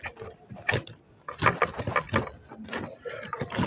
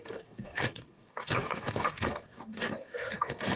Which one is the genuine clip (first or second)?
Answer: first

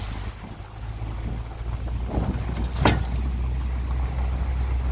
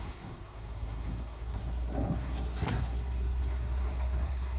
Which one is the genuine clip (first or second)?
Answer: first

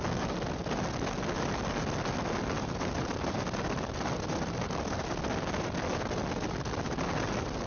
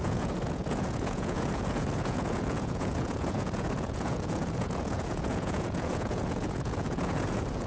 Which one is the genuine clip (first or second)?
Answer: first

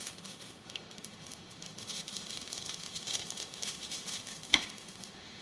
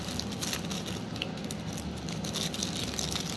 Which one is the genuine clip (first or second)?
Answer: second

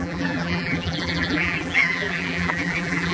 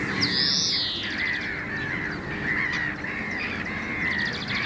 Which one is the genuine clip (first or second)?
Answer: second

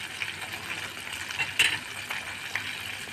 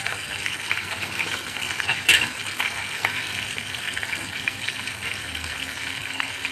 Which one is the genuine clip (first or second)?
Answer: first